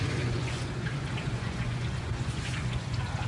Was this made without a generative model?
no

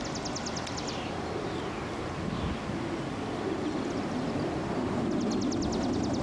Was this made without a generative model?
yes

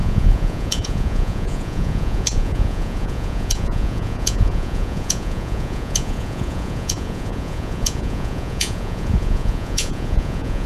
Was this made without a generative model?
no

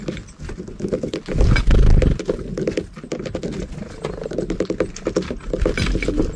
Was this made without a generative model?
yes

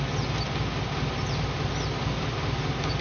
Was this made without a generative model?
yes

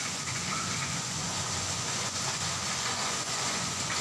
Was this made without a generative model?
no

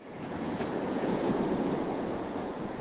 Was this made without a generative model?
no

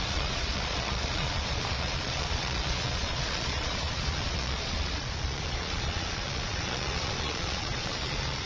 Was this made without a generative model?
no